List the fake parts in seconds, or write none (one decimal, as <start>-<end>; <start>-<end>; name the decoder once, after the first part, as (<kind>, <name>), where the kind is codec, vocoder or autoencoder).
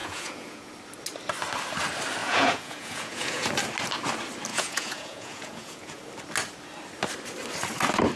0.0-0.7 (vocoder, Vocos); 2.2-3.5; 4.5-6.0